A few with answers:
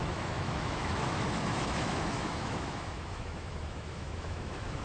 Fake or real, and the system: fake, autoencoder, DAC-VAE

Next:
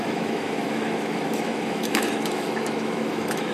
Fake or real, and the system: fake, autoencoder, DAC-VAE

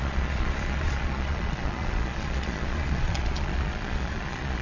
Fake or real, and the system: fake, vocoder, Vocos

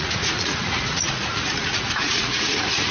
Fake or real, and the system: fake, vocoder, Vocos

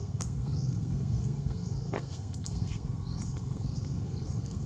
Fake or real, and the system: fake, codec, SNAC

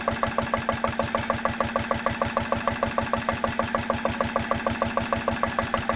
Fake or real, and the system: real